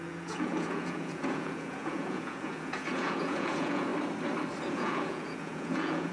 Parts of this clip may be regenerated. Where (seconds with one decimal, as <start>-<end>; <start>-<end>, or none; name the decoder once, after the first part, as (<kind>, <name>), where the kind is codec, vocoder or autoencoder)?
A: 0.0-3.9 (vocoder, Vocos); 4.7-6.1